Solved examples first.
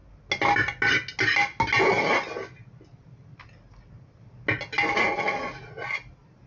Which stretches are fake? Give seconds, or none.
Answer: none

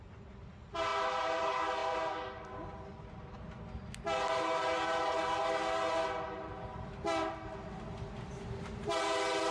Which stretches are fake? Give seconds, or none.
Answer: none

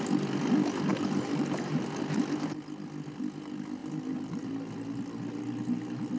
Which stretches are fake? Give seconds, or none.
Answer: 0.9-2.0 (vocoder, BigVGAN v2); 3.8-4.5

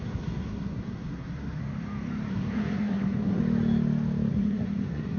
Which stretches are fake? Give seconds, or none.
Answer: 0.0-1.6 (codec, SNAC); 2.3-3.4; 4.3-5.2

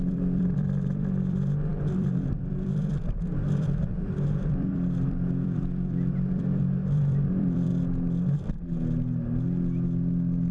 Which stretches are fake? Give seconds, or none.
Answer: 0.0-7.7 (vocoder, BigVGAN v2)

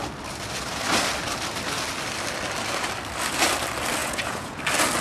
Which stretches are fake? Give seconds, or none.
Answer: 4.0-4.6 (vocoder, Vocos)

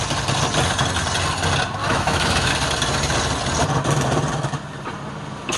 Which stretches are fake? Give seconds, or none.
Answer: 1.8-2.5 (autoencoder, DAC-VAE)